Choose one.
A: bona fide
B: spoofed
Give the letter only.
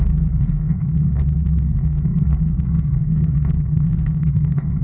B